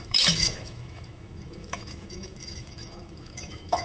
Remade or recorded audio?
remade